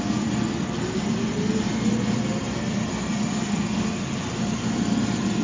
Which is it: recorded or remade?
remade